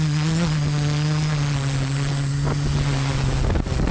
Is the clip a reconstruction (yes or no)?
no